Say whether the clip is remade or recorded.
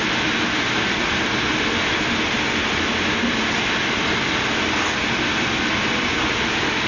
recorded